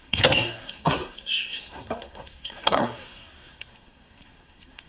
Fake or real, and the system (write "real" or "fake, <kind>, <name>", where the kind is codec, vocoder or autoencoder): fake, codec, SNAC